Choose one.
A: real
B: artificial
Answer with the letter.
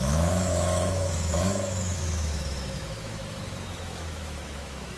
B